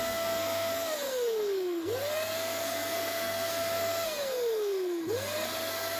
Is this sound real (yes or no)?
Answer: no